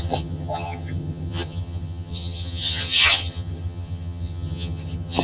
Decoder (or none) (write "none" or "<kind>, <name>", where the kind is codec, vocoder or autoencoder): vocoder, HiFi-GAN